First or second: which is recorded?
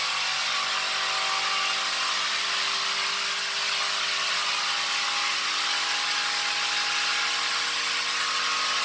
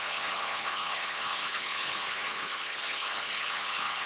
first